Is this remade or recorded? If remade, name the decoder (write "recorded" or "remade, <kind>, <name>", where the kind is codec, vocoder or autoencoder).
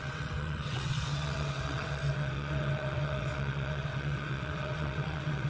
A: remade, vocoder, WaveNeXt